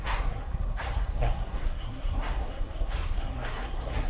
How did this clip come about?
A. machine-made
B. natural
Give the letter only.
A